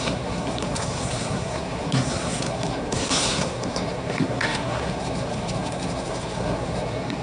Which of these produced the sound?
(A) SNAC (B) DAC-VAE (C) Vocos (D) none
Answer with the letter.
A